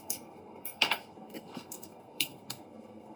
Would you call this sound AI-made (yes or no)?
yes